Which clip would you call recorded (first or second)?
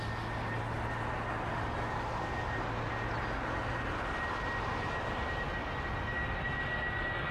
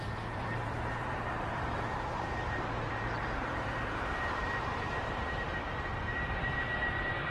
first